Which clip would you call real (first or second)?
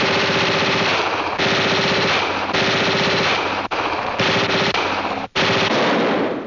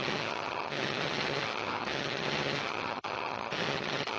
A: first